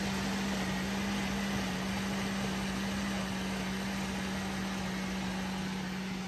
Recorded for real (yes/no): yes